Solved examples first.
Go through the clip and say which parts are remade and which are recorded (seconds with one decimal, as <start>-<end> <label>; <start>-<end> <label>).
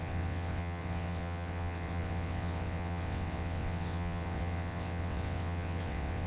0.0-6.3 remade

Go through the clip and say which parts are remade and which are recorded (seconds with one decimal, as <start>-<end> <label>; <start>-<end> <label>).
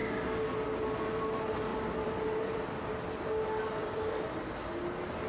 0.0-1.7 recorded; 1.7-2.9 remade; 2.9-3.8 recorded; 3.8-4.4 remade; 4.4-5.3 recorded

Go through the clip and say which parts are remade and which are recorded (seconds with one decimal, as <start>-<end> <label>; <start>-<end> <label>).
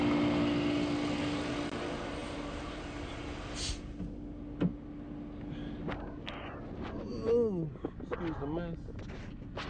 0.0-2.2 recorded; 2.2-3.2 remade; 3.2-9.7 recorded